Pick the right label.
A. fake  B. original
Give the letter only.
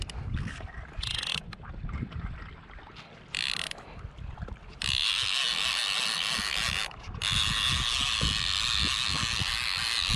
B